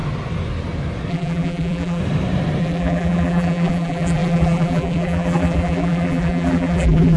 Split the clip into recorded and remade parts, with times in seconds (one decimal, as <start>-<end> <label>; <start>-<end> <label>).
0.0-1.1 recorded; 1.1-2.0 remade; 2.0-2.6 recorded; 2.6-7.2 remade